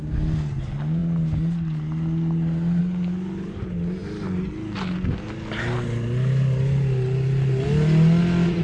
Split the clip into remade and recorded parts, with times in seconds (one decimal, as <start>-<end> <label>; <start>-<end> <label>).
0.0-8.6 recorded